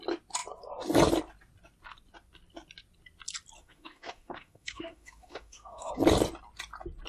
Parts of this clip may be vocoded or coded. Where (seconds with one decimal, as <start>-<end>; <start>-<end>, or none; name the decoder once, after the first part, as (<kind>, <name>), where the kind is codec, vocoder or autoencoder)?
3.6-5.9 (autoencoder, DAC-VAE)